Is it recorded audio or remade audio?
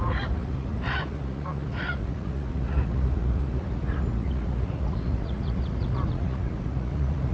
remade